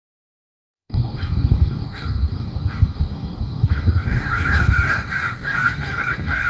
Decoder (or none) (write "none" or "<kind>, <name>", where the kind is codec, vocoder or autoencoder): codec, DAC